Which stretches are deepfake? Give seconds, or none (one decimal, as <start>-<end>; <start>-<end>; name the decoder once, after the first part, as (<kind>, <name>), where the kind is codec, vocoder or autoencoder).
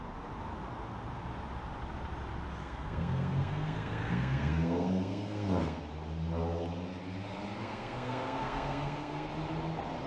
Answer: 2.6-5.8 (codec, SNAC); 7.6-9.3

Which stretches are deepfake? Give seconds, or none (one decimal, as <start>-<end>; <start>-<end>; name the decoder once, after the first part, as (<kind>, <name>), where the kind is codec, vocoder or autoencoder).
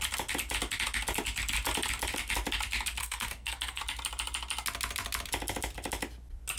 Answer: 3.0-3.8 (codec, SNAC)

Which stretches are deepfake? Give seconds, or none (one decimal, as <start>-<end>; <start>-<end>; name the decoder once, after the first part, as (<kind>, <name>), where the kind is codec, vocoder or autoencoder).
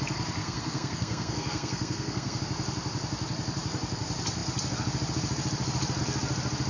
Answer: 0.4-2.4 (codec, SNAC)